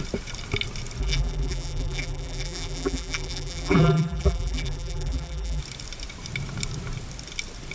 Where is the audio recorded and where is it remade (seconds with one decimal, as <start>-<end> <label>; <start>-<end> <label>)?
0.0-1.0 recorded; 1.0-5.6 remade; 5.6-7.7 recorded